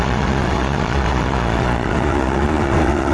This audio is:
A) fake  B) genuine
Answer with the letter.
A